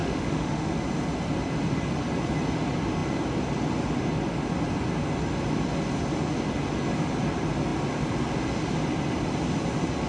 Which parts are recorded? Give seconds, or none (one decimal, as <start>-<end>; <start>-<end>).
0.7-10.1